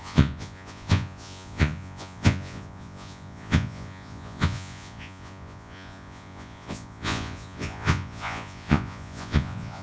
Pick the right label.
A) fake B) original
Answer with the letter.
A